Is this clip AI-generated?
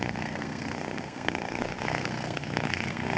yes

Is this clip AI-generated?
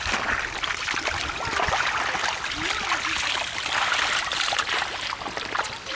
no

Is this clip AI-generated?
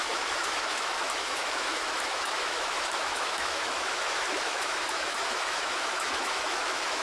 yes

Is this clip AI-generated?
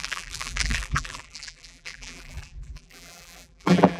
yes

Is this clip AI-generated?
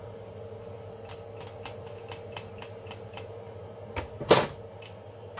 no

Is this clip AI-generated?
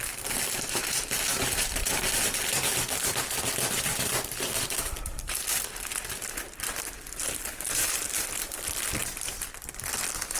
yes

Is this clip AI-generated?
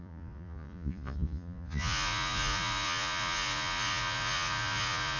yes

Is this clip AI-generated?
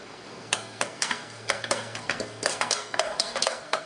yes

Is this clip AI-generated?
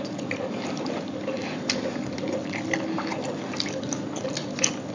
no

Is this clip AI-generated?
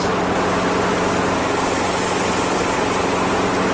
no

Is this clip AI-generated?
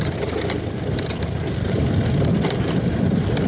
no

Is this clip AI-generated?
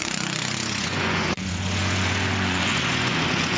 yes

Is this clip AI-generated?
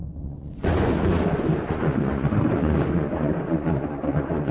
yes